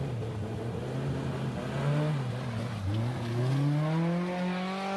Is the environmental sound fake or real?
real